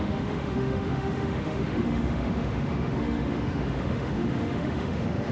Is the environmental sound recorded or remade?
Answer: remade